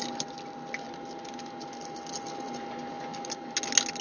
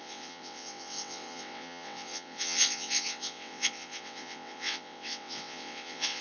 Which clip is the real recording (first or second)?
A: first